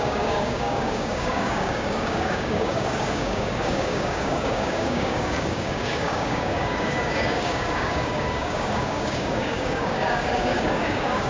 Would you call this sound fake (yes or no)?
yes